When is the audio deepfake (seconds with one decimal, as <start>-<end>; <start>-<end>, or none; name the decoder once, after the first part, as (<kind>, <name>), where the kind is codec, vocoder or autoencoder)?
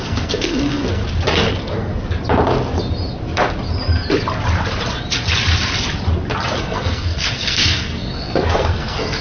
0.0-1.0 (codec, SNAC); 1.5-1.9; 6.6-9.2